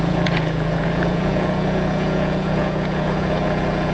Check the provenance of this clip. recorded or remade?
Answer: remade